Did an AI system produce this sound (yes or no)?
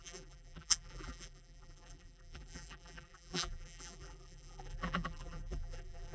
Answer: yes